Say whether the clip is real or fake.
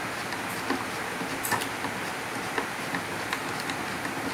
real